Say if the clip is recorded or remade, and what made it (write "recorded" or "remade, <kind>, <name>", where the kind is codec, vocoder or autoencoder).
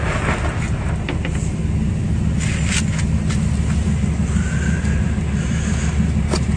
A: recorded